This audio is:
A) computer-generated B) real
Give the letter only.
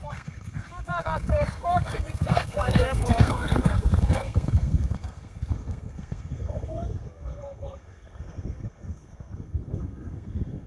A